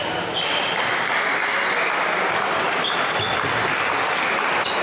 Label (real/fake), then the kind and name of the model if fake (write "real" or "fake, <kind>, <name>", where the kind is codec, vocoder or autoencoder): real